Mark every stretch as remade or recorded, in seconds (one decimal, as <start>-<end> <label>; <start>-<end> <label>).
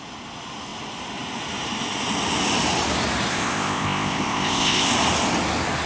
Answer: 0.0-3.3 recorded; 3.3-4.9 remade; 4.9-5.9 recorded